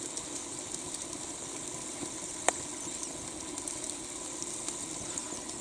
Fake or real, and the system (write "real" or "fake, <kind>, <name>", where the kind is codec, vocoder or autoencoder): real